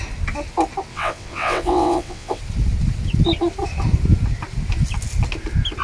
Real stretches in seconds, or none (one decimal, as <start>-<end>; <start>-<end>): 0.0-0.9; 2.4-5.8